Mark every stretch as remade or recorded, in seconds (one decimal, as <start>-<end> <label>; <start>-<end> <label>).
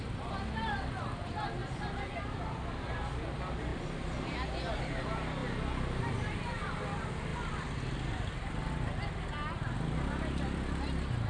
0.0-11.3 recorded